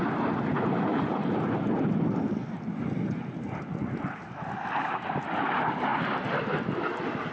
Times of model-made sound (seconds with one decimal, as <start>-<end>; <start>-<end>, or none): none